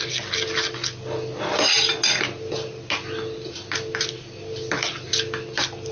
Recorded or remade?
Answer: recorded